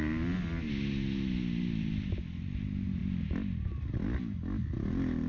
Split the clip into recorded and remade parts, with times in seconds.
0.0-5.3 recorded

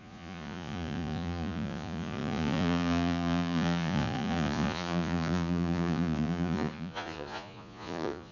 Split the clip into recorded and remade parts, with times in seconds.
0.0-8.3 remade

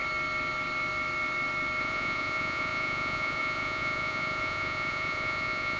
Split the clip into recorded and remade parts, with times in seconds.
0.0-1.8 recorded; 1.8-5.8 remade

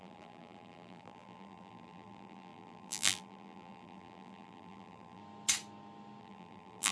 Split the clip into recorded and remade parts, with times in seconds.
0.0-5.2 remade; 5.2-6.2 recorded; 6.2-6.9 remade

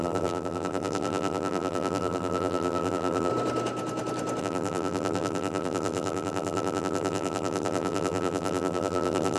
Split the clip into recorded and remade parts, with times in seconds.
0.0-3.3 remade; 3.3-4.4 recorded; 4.4-9.4 remade

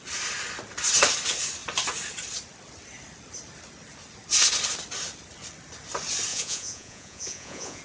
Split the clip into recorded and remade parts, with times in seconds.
0.0-6.3 recorded; 6.3-7.8 remade

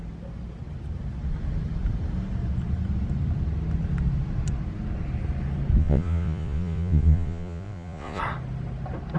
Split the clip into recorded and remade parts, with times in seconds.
0.0-5.8 recorded; 5.8-8.2 remade; 8.2-9.2 recorded